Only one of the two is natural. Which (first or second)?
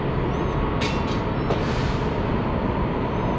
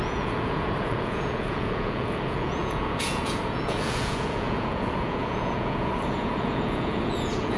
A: first